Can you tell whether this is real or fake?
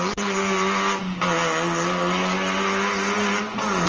real